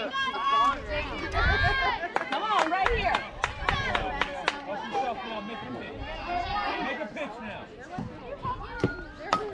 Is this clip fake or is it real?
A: real